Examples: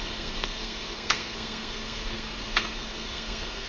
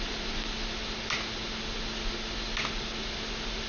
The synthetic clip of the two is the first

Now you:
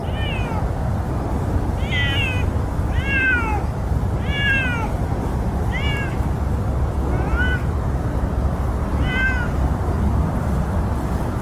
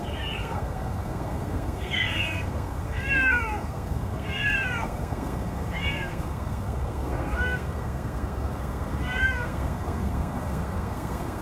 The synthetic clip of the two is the second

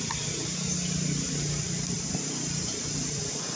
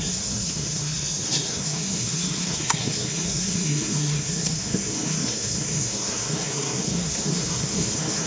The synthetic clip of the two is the second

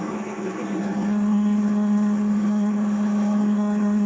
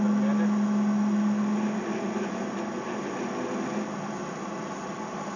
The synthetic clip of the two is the first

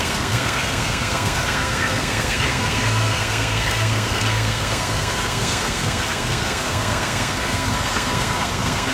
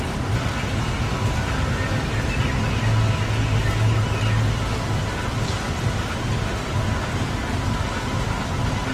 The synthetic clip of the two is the first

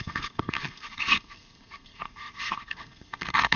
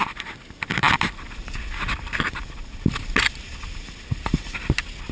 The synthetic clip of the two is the first